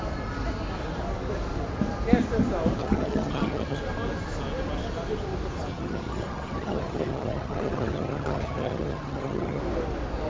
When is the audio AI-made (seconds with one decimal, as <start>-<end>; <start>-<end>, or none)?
2.8-3.8; 5.7-9.6

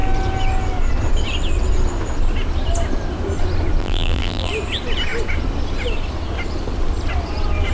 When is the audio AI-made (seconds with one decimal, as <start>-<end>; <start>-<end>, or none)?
3.8-4.5

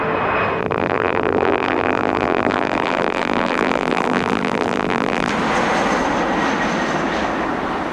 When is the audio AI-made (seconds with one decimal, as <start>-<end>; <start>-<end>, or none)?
0.6-5.3

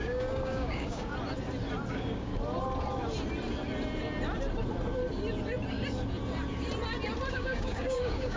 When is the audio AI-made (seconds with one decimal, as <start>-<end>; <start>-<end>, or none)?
0.0-1.1; 1.9-2.3; 7.3-8.4

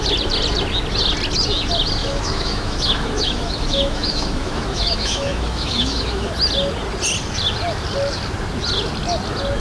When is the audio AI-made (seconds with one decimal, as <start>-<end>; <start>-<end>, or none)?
2.0-6.3

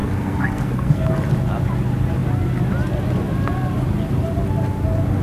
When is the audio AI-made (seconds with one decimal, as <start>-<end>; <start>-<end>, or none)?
0.0-1.1

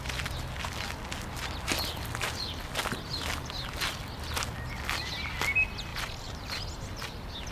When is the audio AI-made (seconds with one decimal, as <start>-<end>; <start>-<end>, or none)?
5.9-6.6

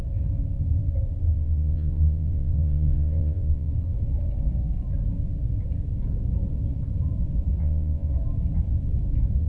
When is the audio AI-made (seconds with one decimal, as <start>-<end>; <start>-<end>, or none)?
1.3-3.7; 7.6-8.1